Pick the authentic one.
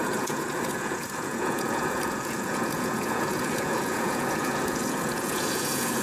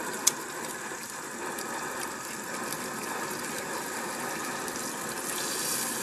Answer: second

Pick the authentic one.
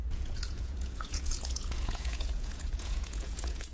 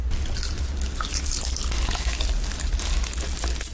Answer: second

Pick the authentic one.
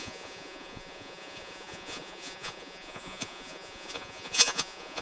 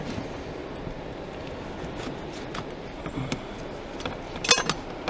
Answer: second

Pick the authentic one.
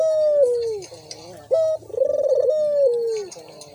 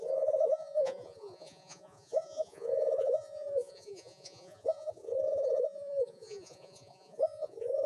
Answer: first